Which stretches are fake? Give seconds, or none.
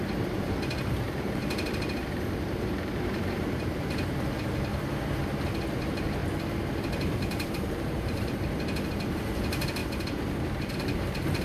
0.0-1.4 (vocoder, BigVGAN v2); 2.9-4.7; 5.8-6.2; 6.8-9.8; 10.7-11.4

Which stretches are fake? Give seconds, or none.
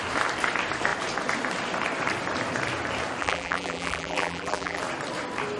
3.2-4.8 (vocoder, BigVGAN v2)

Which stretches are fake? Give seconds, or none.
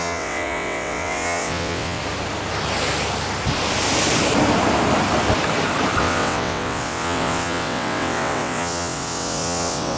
0.0-2.0 (vocoder, WaveNeXt); 6.0-10.0